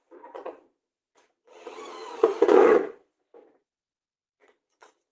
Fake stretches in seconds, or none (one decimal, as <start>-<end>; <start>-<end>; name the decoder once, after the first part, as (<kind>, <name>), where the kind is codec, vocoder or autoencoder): 0.0-2.8 (vocoder, Vocos); 3.5-5.1